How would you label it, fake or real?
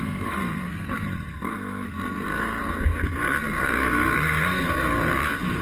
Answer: fake